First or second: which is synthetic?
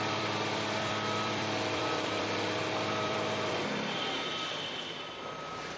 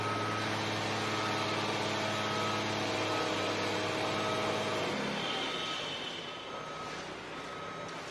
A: first